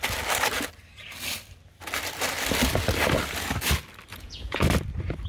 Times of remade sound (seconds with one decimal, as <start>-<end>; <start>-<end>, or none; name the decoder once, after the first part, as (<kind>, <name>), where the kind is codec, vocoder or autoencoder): 4.1-4.6 (vocoder, Vocos)